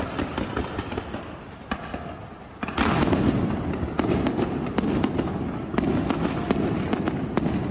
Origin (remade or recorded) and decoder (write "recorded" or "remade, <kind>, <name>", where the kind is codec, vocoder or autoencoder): recorded